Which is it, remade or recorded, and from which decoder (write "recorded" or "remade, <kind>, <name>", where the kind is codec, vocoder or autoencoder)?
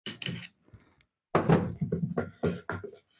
recorded